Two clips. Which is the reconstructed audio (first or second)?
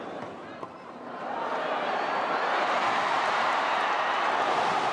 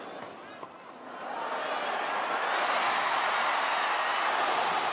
first